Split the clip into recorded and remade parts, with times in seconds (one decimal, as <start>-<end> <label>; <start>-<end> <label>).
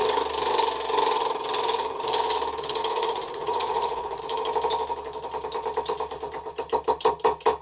0.0-2.8 recorded; 2.8-4.2 remade; 4.2-7.6 recorded